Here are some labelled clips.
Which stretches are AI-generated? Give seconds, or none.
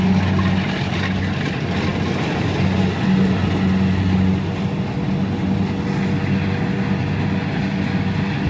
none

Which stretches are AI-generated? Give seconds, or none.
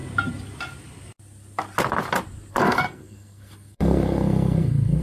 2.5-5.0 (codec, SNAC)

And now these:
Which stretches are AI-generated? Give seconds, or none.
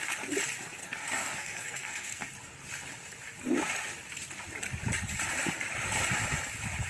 0.8-2.3 (codec, SNAC)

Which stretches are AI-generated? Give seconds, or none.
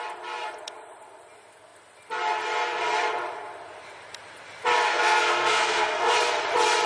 4.9-6.1 (codec, SNAC)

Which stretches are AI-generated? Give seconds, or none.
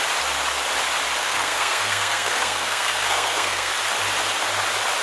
1.2-3.7 (codec, SNAC)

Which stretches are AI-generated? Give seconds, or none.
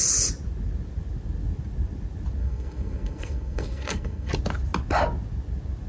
2.4-4.3 (codec, SNAC)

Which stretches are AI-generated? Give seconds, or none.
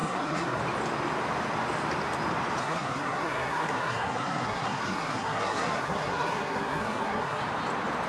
0.0-0.6 (codec, SNAC); 2.6-7.4